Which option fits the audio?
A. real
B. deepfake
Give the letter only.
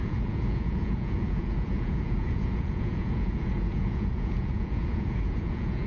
B